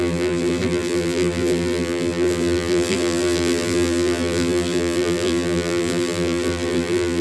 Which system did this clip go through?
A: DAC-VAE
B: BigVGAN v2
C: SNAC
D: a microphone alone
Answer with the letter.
B